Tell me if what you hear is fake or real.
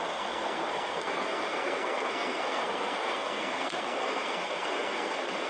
fake